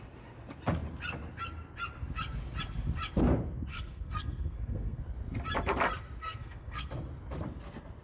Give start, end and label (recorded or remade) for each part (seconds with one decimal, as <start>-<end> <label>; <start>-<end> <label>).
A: 0.0-3.7 recorded; 3.7-5.0 remade; 5.0-6.2 recorded; 6.2-6.9 remade; 6.9-8.0 recorded